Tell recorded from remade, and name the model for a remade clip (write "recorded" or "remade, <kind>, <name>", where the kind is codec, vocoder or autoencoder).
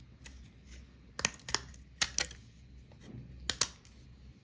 recorded